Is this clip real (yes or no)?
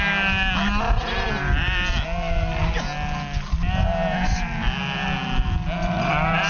yes